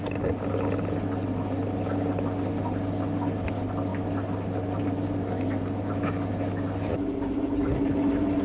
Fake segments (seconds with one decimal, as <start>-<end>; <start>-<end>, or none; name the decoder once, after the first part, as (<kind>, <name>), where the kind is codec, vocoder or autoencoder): none